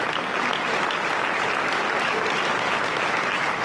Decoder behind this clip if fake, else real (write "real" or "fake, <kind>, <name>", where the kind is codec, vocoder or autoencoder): real